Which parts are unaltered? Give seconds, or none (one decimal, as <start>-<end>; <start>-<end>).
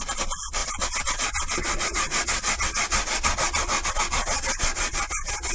0.0-5.5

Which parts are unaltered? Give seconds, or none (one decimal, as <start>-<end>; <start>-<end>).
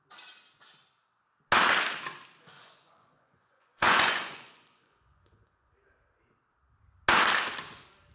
0.0-2.6; 5.7-8.1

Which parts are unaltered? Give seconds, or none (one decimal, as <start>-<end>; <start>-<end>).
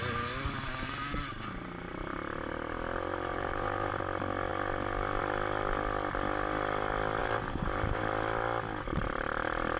0.0-3.3; 3.9-7.2; 8.0-9.8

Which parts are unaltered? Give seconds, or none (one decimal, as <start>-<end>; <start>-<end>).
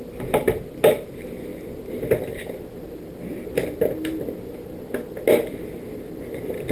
0.0-6.7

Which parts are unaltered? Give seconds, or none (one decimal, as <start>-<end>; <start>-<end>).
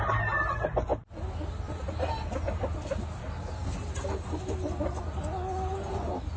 0.0-0.9; 2.3-3.6; 5.0-6.4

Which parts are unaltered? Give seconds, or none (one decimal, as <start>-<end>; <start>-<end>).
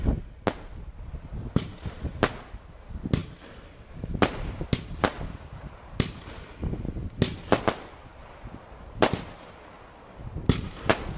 0.0-11.2